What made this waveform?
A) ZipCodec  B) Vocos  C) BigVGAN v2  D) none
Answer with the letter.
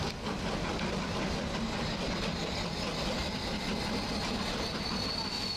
D